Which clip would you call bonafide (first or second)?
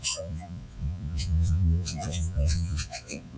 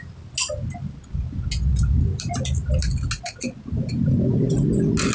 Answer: second